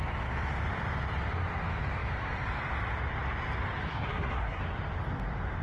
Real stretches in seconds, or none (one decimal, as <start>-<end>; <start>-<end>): 0.0-3.9; 4.6-5.6